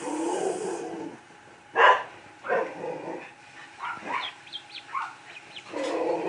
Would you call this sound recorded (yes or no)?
yes